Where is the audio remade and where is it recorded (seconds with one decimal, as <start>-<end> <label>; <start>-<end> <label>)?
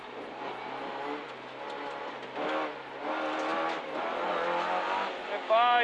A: 0.0-5.8 recorded